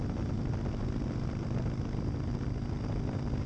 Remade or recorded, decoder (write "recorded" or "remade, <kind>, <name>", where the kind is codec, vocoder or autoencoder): recorded